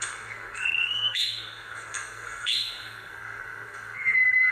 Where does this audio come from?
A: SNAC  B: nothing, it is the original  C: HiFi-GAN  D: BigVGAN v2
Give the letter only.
A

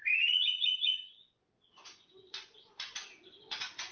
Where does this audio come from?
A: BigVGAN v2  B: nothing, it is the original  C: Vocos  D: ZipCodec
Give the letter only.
C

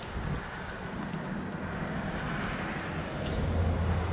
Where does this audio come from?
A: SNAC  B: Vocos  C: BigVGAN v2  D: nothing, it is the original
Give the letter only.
D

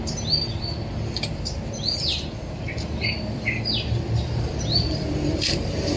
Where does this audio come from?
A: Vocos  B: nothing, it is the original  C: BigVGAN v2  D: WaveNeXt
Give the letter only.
C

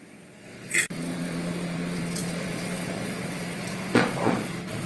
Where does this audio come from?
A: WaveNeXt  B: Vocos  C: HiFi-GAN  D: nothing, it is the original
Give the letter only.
B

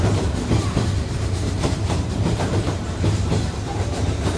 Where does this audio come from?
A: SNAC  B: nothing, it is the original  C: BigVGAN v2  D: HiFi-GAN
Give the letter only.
C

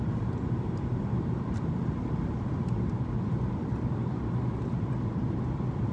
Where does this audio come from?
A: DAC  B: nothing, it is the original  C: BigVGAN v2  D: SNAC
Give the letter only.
C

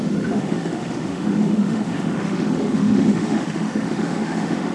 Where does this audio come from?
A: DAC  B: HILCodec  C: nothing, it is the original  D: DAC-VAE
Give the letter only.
D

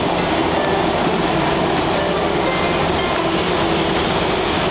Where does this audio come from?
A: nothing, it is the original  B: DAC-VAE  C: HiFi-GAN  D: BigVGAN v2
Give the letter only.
A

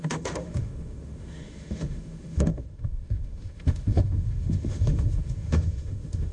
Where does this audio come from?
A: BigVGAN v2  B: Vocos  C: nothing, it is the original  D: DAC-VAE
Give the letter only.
D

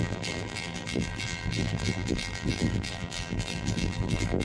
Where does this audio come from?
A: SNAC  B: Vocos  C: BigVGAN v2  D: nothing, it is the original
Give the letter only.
C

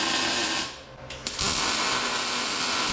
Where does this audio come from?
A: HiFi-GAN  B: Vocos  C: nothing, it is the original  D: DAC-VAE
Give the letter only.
C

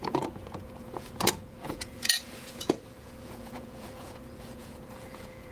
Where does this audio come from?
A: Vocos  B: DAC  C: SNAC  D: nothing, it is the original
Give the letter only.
A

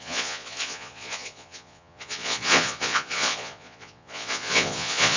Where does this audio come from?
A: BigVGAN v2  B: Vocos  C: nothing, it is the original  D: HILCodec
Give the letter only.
B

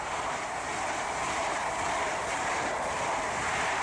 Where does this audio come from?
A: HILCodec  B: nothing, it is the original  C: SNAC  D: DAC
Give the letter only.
B